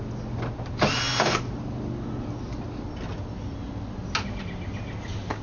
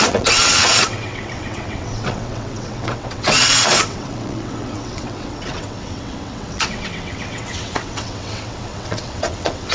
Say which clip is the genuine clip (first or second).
first